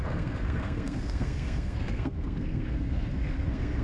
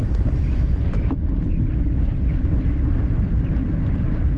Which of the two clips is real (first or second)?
second